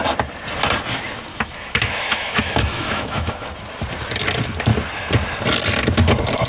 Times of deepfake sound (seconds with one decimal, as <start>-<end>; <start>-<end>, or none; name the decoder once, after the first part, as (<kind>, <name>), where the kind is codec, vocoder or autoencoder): 1.3-3.3 (autoencoder, DAC-VAE)